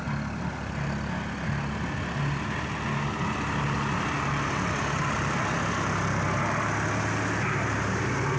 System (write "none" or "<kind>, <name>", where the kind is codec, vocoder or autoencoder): none